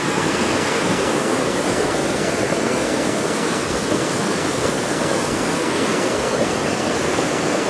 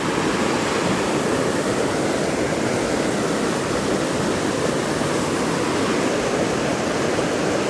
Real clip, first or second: second